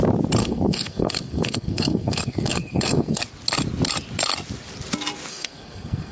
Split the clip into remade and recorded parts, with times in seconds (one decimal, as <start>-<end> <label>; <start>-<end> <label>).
0.0-0.4 recorded; 0.4-3.2 remade; 3.2-5.3 recorded; 5.3-6.1 remade